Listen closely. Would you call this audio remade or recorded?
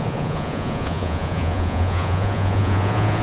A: remade